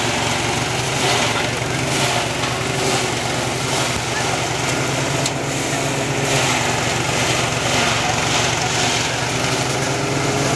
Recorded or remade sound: recorded